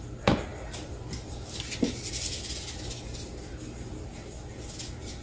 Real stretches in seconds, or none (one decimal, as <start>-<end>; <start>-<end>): 0.0-5.2